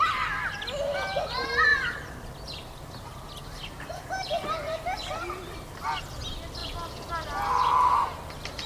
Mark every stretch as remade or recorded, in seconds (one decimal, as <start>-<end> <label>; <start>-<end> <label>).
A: 0.0-8.7 recorded